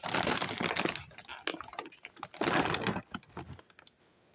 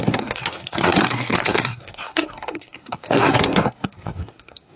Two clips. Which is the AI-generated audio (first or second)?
second